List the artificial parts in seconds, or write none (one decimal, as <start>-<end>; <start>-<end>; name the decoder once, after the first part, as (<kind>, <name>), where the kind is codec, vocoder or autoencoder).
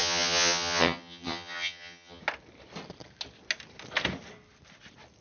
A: 0.0-2.2 (vocoder, HiFi-GAN)